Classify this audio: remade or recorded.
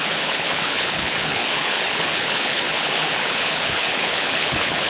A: remade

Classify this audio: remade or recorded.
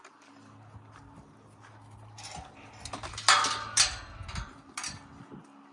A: recorded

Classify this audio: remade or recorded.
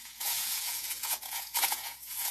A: remade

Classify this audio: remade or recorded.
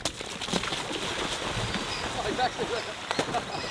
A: recorded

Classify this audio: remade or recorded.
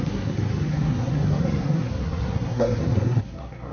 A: remade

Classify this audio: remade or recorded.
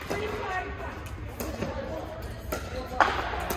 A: recorded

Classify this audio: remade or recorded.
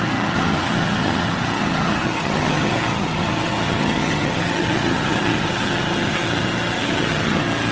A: remade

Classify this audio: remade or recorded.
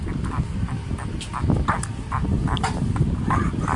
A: recorded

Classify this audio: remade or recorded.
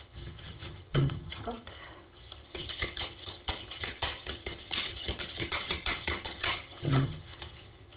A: remade